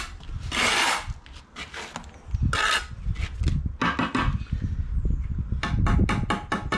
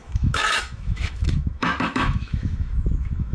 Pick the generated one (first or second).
second